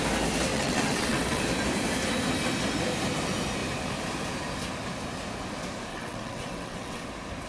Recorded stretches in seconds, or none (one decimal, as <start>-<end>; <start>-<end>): 0.0-0.5; 1.4-5.9; 7.1-7.5